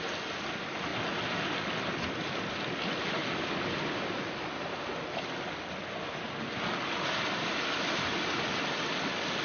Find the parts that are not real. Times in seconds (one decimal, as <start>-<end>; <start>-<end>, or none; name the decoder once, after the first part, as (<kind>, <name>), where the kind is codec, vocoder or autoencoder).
none